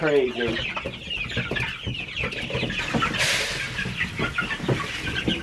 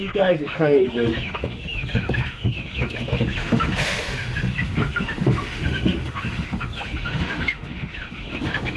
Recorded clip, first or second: first